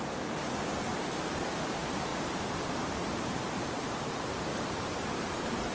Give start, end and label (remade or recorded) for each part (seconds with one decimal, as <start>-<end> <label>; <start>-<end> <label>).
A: 0.0-2.1 recorded; 2.1-5.7 remade